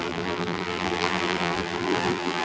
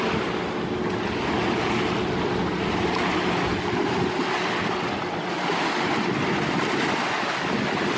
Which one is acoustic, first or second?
second